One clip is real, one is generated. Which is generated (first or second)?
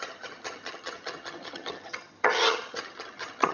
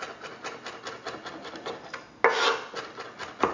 first